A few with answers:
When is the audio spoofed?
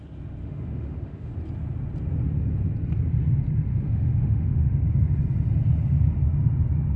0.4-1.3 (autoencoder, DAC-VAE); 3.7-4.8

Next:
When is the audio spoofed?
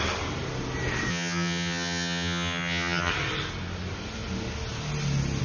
1.1-3.1 (vocoder, HiFi-GAN)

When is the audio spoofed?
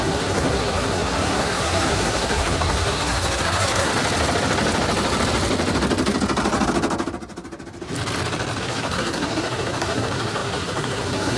0.0-3.9 (codec, SNAC); 8.6-11.4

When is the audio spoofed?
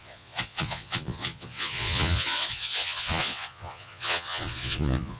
0.0-5.2 (vocoder, Vocos)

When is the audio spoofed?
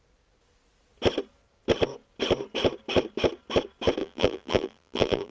4.0-5.3 (vocoder, BigVGAN v2)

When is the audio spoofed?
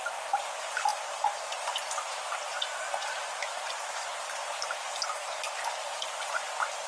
0.9-3.9 (vocoder, BigVGAN v2)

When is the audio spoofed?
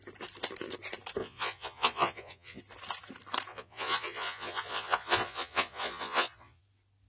1.2-2.6 (vocoder, Vocos); 3.5-6.6